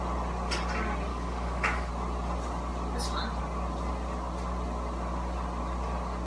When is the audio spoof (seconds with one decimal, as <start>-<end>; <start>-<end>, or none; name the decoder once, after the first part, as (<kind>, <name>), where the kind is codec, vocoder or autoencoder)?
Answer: 1.1-1.9 (codec, DAC)

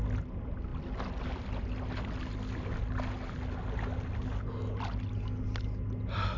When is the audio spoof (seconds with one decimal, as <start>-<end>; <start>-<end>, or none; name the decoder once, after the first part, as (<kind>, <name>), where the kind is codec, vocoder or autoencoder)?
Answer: none

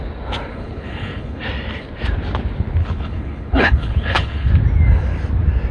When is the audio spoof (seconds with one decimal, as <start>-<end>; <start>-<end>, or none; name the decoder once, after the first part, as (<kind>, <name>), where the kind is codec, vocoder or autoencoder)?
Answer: 0.5-1.4 (codec, HILCodec); 2.8-4.5

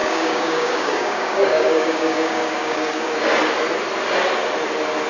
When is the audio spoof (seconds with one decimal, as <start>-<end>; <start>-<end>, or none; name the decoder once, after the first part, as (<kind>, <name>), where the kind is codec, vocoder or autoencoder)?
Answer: 0.0-3.1 (codec, DAC)

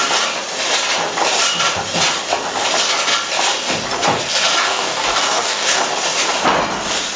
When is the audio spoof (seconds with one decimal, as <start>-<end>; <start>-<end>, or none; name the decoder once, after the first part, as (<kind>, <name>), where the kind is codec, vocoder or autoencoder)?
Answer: 4.6-5.8 (codec, DAC)

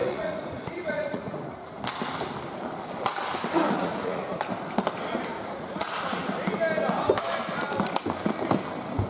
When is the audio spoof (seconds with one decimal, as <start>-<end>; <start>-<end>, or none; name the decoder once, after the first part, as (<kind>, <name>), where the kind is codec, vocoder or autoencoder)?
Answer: 0.0-1.8 (vocoder, Vocos); 3.8-4.4; 5.3-6.3

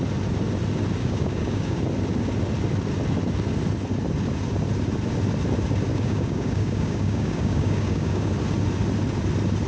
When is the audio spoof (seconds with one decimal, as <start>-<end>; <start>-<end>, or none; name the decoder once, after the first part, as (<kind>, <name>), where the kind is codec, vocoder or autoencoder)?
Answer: 1.0-1.8 (codec, DAC); 5.9-8.3